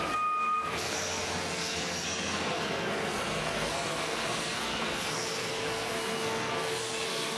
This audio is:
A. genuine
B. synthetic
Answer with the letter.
B